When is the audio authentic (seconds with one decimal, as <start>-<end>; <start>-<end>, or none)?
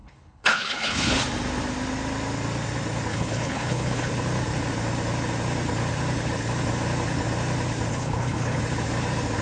1.2-3.1; 4.1-7.9; 8.6-9.4